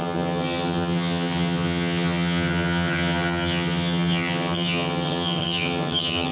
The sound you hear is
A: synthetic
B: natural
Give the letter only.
A